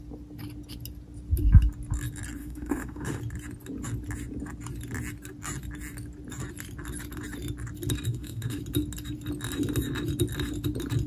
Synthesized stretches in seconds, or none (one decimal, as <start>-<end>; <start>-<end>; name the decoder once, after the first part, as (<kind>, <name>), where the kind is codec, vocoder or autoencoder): 2.4-3.2 (autoencoder, DAC-VAE); 8.1-8.6